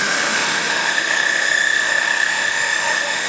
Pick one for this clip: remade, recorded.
remade